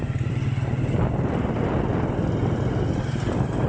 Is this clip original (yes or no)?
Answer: yes